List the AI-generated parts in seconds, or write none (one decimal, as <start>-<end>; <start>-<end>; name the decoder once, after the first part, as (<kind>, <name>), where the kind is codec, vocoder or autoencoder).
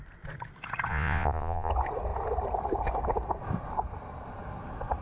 0.9-1.7 (vocoder, Vocos)